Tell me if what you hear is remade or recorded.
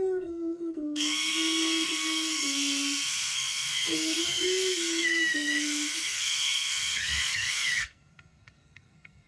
remade